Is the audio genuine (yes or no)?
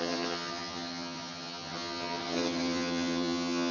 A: no